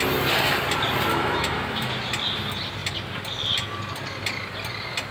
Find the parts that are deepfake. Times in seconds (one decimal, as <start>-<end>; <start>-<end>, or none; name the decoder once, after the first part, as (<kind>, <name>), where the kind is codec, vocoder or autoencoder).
1.1-1.9 (autoencoder, DAC-VAE)